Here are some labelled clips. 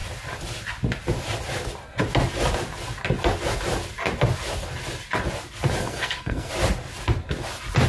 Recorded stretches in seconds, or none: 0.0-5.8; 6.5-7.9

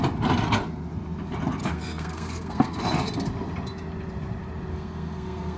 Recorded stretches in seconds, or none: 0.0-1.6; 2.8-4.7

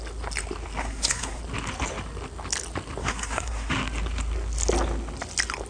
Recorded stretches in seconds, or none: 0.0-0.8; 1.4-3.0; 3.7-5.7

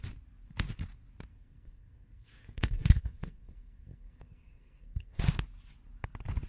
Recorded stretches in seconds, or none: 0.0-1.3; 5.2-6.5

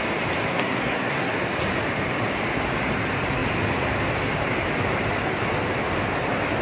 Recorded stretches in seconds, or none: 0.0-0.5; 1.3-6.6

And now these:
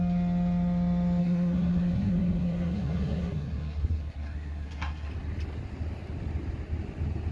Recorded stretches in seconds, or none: 0.0-1.2; 5.1-7.3